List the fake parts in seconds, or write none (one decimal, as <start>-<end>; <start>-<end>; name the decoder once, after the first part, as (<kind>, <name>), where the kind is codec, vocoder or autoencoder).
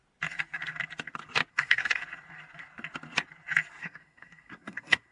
1.5-2.0 (codec, SNAC); 3.8-5.1